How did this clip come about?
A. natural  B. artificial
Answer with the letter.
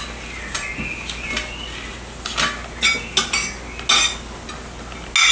A